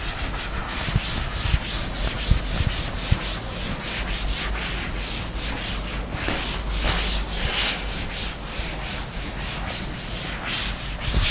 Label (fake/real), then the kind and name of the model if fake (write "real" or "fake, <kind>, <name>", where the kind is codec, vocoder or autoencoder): real